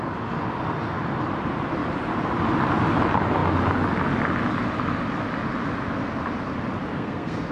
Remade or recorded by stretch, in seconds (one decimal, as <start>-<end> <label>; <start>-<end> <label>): 0.0-6.9 recorded; 6.9-7.5 remade

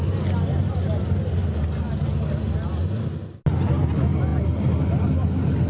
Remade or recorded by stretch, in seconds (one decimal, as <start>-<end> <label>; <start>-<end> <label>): 0.0-5.7 recorded

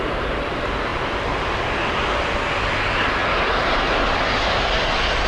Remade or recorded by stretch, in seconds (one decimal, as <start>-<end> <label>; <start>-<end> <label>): 0.0-3.2 recorded; 3.2-4.8 remade; 4.8-5.3 recorded

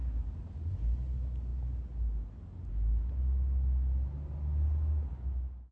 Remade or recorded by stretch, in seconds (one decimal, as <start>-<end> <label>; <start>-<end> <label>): 0.0-5.7 recorded

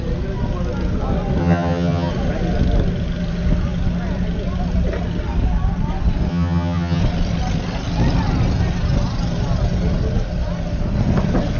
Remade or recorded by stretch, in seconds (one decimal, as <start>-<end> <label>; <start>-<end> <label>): 0.0-1.4 recorded; 1.4-2.1 remade; 2.1-6.3 recorded; 6.3-7.0 remade; 7.0-11.6 recorded

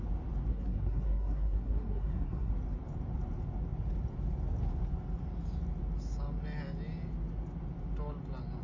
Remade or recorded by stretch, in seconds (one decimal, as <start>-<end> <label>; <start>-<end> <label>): 0.0-0.5 recorded; 0.5-2.5 remade; 2.5-8.6 recorded

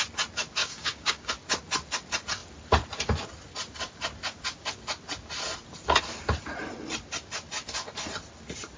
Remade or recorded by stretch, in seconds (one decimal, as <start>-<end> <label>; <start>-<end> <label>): 0.0-0.6 recorded; 0.6-1.3 remade; 1.3-8.8 recorded

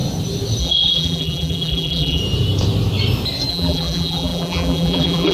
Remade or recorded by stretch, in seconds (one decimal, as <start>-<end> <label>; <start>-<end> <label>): 0.0-0.6 recorded; 0.6-2.2 remade; 2.2-3.5 recorded; 3.5-5.3 remade